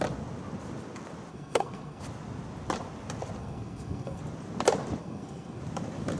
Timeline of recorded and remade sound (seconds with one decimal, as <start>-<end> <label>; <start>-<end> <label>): 0.0-1.3 recorded; 1.3-2.0 remade; 2.0-3.4 recorded; 3.4-4.2 remade; 4.2-5.0 recorded; 5.0-5.6 remade; 5.6-6.2 recorded